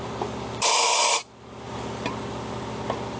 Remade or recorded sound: recorded